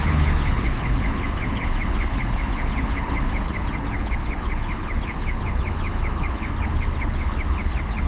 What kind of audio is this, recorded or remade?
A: remade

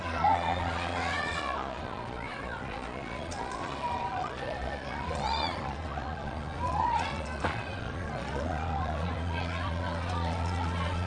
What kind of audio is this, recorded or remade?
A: remade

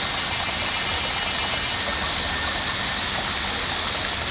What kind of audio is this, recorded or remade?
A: recorded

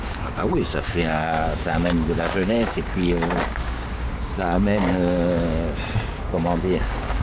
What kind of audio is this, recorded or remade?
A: remade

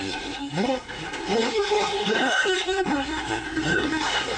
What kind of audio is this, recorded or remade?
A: remade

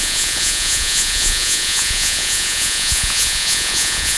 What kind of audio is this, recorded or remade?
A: remade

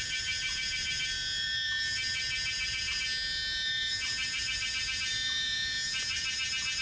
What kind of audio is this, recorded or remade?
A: remade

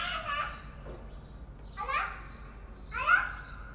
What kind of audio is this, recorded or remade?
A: recorded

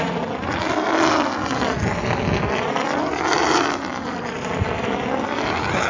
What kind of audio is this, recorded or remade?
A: recorded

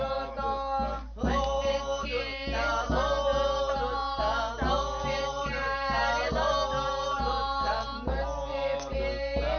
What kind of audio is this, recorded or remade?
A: recorded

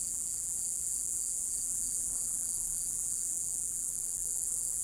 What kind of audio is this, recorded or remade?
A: remade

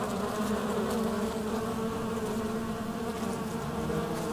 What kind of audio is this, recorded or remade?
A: recorded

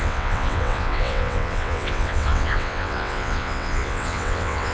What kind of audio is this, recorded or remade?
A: remade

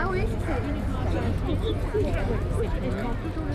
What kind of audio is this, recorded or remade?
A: recorded